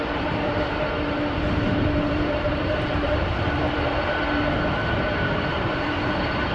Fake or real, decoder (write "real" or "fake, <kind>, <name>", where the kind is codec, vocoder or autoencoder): fake, vocoder, BigVGAN v2